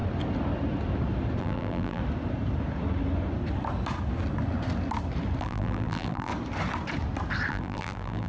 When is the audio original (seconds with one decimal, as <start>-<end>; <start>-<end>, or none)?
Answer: 0.0-1.4; 2.0-5.4; 6.3-7.5